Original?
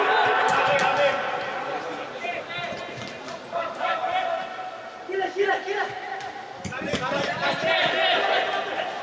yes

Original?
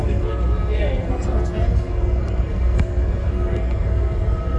no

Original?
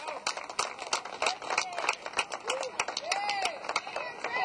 yes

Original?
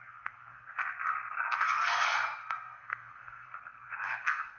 no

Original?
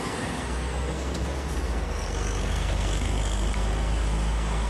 no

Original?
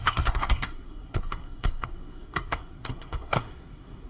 no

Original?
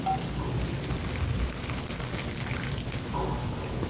yes